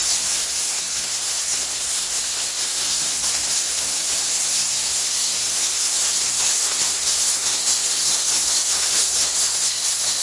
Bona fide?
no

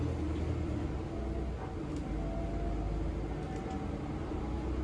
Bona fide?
yes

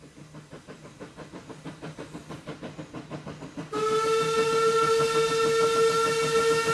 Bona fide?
yes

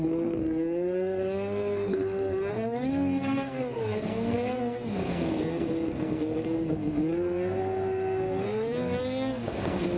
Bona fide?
no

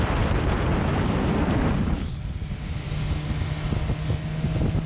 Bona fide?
yes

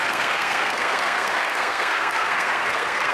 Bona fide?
no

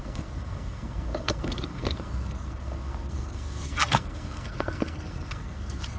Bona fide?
no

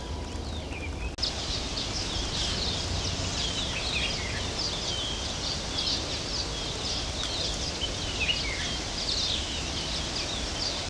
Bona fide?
yes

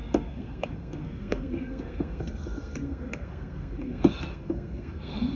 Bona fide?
no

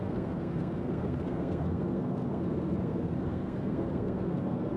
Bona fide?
no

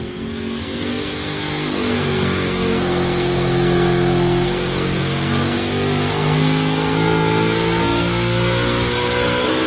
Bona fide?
no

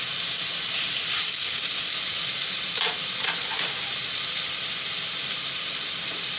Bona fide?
yes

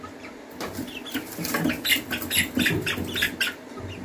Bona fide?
yes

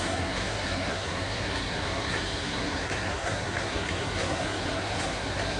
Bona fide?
no